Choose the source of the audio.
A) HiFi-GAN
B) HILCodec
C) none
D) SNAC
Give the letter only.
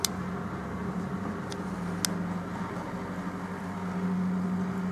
C